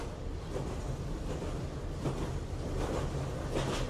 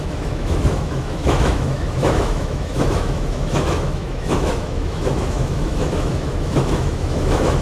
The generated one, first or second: second